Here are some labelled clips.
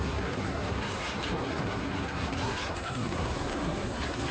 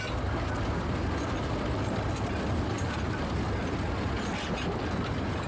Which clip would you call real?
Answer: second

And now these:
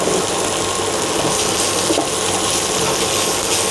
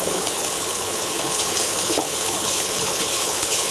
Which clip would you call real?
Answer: first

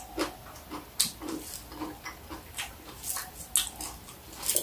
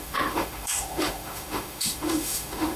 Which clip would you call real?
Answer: first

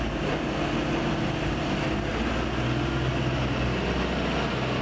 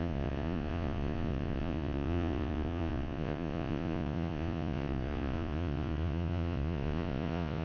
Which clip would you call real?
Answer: first